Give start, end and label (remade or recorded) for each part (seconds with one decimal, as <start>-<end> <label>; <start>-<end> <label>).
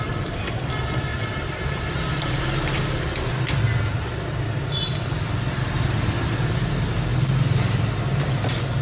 0.0-1.1 recorded; 1.1-2.8 remade; 2.8-7.1 recorded; 7.1-7.9 remade; 7.9-8.8 recorded